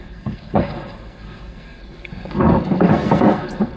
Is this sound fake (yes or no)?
yes